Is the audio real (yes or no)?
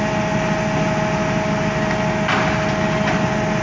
yes